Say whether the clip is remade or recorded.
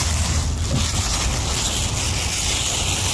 recorded